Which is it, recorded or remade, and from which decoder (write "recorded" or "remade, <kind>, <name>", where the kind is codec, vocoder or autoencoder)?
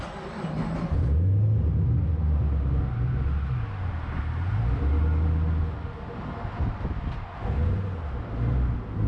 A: recorded